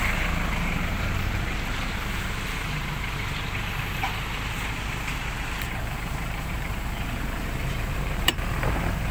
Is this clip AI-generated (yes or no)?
yes